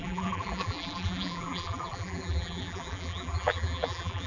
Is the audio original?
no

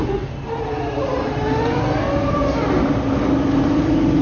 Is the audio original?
yes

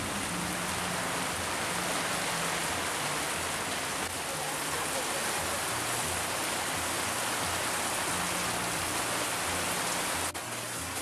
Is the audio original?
yes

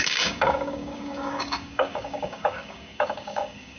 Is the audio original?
no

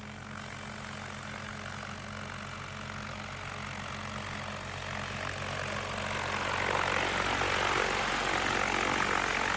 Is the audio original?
yes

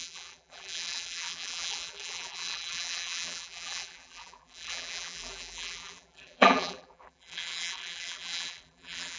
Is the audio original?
no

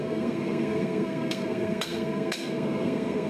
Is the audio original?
no